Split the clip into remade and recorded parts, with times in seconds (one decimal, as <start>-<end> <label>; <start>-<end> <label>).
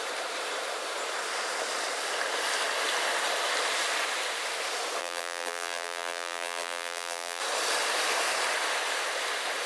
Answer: 0.0-5.0 recorded; 5.0-7.4 remade; 7.4-9.7 recorded